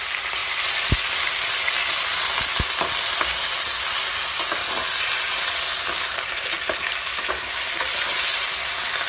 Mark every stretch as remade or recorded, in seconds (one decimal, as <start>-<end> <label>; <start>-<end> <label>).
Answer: 0.0-9.1 recorded